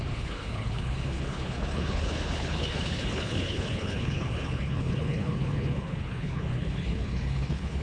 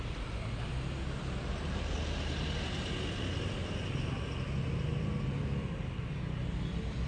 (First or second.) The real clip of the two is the second